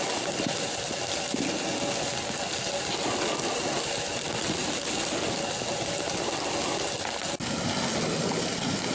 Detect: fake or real real